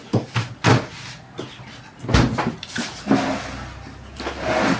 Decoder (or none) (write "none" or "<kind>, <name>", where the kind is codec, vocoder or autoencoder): none